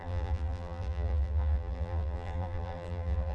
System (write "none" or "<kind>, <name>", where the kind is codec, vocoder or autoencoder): vocoder, BigVGAN v2